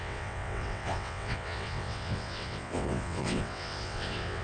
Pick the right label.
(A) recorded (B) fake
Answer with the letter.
B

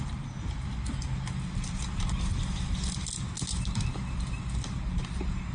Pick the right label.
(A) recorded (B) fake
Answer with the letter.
A